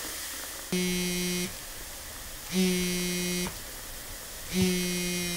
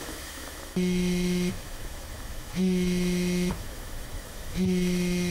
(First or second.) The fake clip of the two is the second